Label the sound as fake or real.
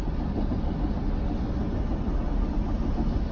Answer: real